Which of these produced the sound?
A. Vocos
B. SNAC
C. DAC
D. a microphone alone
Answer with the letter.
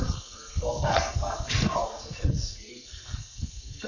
B